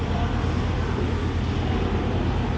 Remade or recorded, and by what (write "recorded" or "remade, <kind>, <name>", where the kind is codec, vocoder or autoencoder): recorded